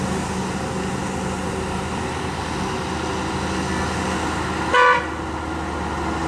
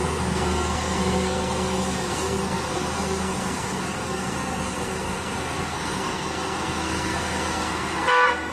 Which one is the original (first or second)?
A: first